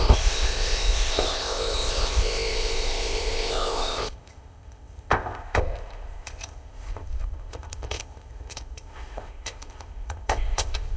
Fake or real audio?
fake